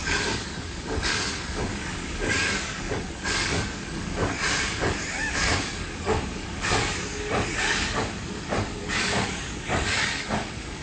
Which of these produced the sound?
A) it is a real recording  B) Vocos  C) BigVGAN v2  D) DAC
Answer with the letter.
D